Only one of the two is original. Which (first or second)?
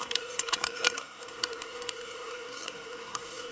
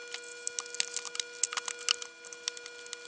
second